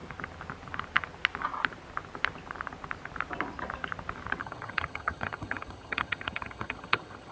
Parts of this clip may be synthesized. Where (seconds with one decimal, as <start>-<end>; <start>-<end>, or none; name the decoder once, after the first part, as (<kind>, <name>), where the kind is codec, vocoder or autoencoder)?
4.4-7.3 (vocoder, HiFi-GAN)